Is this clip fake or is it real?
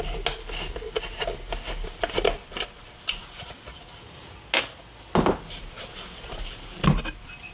real